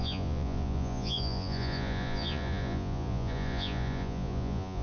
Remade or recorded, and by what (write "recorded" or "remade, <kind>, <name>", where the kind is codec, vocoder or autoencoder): remade, vocoder, Vocos